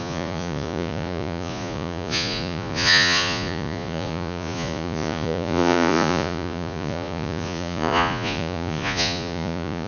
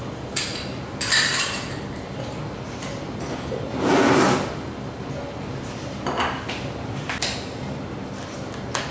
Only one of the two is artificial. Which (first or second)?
first